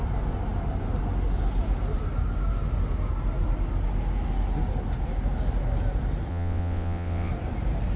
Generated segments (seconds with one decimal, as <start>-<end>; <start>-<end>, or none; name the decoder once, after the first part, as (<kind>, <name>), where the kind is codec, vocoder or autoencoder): 6.3-7.3 (vocoder, WaveNeXt)